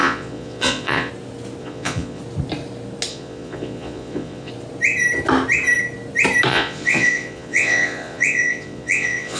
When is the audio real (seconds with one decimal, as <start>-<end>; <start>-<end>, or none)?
1.1-1.6; 2.2-3.1; 4.5-6.5